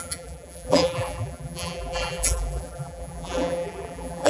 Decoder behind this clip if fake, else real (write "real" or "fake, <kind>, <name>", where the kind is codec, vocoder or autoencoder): fake, vocoder, BigVGAN v2